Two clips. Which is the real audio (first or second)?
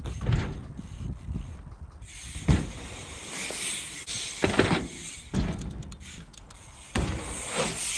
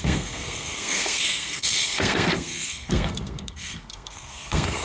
first